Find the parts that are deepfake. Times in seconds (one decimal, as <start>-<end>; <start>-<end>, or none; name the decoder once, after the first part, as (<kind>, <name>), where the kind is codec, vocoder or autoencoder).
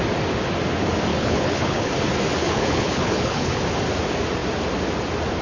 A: 1.1-1.9 (codec, HILCodec); 2.4-3.6